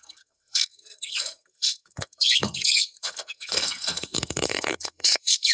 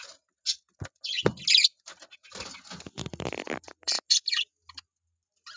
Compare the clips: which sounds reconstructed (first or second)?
first